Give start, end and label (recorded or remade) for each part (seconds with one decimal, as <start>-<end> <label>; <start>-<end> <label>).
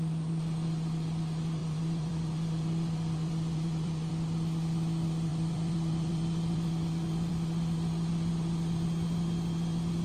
0.0-1.6 recorded; 1.6-4.1 remade; 4.1-5.3 recorded; 5.3-7.3 remade; 7.3-10.0 recorded